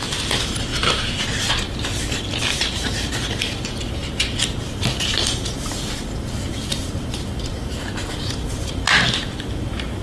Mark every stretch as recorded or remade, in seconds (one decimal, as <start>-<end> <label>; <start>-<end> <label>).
0.0-0.7 remade; 0.7-1.5 recorded; 1.5-4.0 remade; 4.0-4.6 recorded; 4.6-10.0 remade